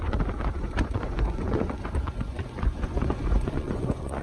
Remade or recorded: remade